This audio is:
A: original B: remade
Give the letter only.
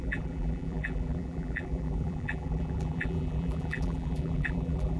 B